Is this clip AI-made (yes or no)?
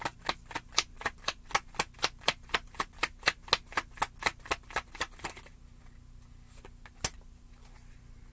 no